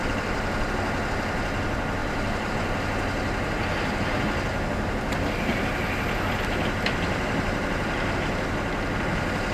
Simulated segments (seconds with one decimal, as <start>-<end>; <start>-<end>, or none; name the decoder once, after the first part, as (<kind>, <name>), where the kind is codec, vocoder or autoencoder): 0.0-0.7 (vocoder, BigVGAN v2); 2.0-2.5

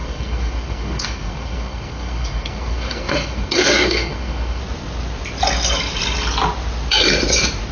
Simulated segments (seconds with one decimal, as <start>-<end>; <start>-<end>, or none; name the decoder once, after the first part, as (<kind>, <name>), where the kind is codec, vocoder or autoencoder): 0.0-4.6 (codec, SNAC)

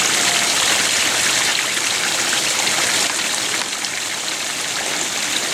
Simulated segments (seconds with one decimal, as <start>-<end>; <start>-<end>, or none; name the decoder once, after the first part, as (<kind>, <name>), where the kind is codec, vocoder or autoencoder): none

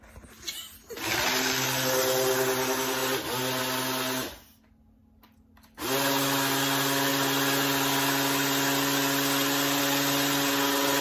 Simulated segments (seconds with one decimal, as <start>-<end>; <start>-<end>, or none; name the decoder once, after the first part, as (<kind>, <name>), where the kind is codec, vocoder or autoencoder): none

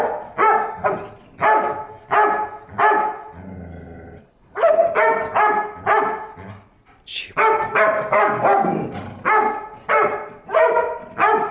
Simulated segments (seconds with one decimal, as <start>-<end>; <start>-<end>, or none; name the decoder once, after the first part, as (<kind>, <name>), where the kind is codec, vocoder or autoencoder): 4.2-4.8 (codec, HILCodec)

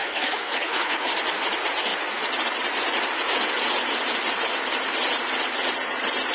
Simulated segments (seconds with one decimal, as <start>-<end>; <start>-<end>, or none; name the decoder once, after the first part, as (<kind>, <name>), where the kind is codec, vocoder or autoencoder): 0.0-1.1 (codec, HILCodec)